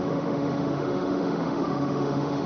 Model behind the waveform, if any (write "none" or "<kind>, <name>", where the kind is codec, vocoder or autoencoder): autoencoder, DAC-VAE